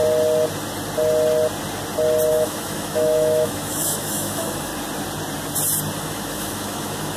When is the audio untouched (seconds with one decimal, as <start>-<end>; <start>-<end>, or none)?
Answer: 0.0-2.3; 4.7-6.0